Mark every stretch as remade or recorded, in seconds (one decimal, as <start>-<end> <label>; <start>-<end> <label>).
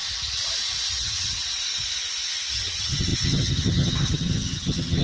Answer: 0.0-0.9 recorded; 0.9-1.4 remade; 1.4-2.5 recorded; 2.5-5.0 remade